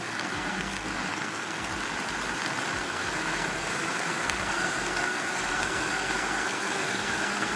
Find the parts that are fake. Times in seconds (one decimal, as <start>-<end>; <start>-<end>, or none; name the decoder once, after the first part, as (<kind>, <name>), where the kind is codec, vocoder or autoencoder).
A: 0.0-1.7 (codec, SNAC); 2.8-7.6